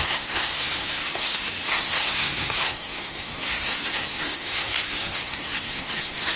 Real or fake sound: fake